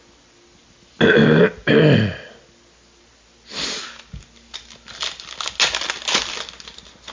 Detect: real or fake real